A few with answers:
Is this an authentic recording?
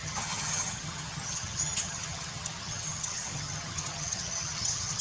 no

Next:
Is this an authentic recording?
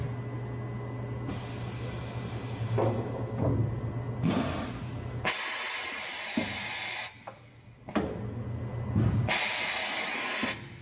yes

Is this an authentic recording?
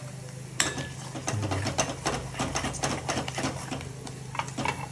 yes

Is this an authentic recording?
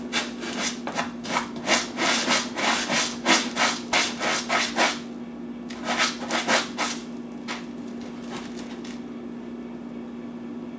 yes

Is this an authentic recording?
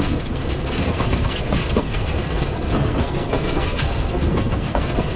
no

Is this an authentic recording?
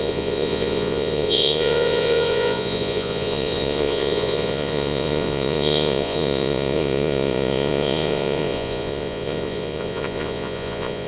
no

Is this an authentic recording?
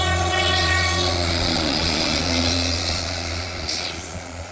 no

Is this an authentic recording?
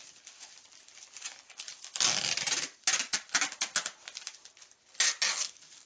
yes